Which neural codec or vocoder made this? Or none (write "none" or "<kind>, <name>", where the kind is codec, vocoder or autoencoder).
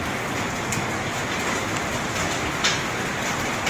none